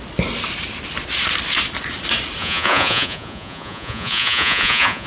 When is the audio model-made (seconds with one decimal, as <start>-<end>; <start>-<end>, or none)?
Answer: 2.4-5.1